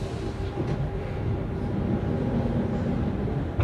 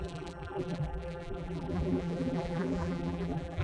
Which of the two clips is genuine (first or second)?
first